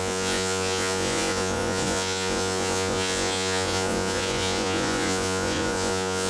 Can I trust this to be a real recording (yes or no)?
no